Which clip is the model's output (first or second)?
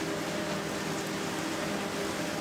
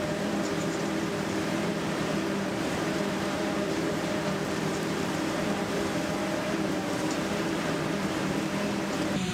second